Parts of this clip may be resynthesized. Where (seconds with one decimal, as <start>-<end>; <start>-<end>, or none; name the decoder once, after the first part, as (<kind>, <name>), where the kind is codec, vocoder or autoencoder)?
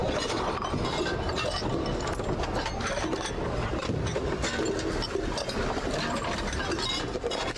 none